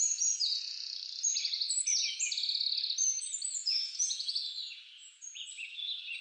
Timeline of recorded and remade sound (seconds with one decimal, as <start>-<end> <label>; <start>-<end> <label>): 0.0-3.6 recorded; 3.6-4.3 remade; 4.3-5.0 recorded; 5.0-5.5 remade; 5.5-6.2 recorded